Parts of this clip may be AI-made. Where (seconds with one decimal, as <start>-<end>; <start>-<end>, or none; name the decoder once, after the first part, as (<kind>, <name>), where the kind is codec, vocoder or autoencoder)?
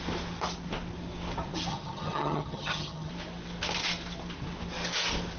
1.7-3.1 (vocoder, HiFi-GAN)